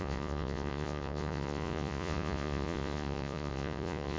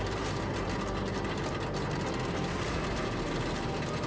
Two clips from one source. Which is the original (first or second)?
second